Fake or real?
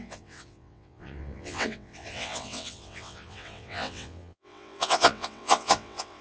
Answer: fake